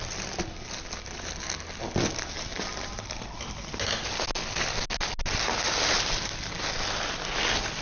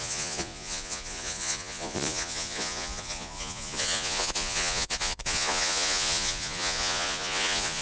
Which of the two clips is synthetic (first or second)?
second